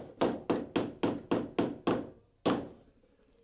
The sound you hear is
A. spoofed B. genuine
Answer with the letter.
B